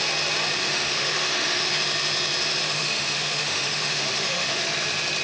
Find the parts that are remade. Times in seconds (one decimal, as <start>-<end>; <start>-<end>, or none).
0.6-1.7; 2.6-4.6